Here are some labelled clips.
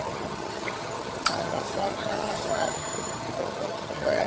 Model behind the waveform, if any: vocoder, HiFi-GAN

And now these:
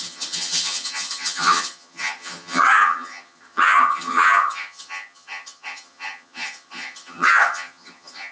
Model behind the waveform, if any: vocoder, HiFi-GAN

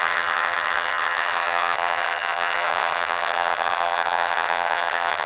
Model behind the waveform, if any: vocoder, HiFi-GAN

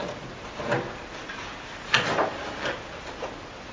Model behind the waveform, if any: none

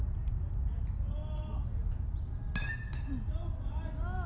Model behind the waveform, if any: none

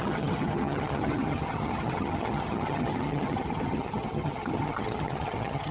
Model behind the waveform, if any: vocoder, HiFi-GAN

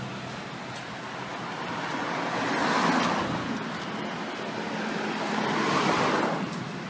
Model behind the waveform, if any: none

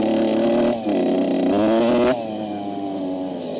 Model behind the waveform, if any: none